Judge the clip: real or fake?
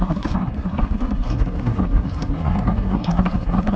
fake